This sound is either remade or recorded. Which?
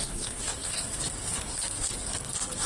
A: remade